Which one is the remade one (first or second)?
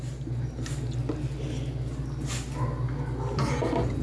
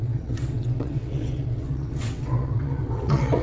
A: second